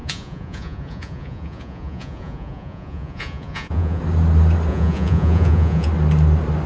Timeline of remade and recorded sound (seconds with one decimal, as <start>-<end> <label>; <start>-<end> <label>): 0.0-4.0 remade; 4.0-4.7 recorded; 4.7-5.9 remade; 5.9-6.7 recorded